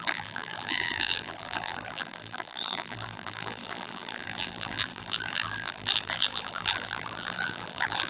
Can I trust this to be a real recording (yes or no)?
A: no